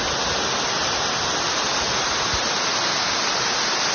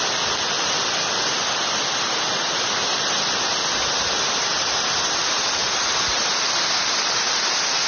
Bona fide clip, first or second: first